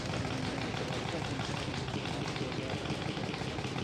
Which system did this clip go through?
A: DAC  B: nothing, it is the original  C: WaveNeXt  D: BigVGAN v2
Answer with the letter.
B